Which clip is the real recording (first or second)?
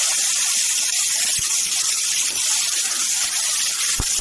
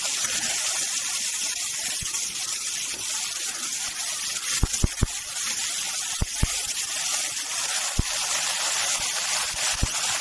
second